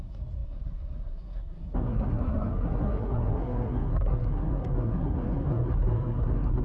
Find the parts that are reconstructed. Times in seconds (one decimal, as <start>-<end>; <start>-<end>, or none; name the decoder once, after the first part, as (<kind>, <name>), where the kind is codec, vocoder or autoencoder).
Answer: 0.0-6.6 (codec, SNAC)